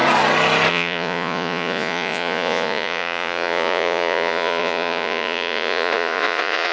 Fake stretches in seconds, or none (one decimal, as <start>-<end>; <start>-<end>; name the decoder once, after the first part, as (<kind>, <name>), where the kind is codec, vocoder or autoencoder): 0.7-6.7 (vocoder, Vocos)